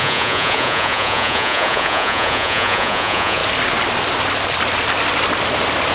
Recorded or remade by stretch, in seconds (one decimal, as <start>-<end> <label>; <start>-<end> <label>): 0.0-3.4 remade; 3.4-5.9 recorded